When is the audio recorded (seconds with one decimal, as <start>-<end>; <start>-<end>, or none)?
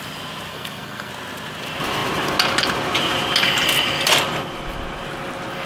0.0-0.5; 1.1-5.7